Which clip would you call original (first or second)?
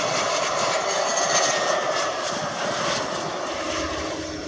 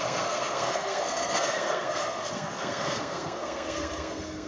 first